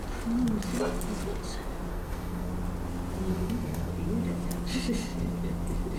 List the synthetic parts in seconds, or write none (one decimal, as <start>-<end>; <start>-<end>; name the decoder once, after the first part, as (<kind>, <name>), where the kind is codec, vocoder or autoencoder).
1.9-2.5 (codec, SNAC); 3.3-3.9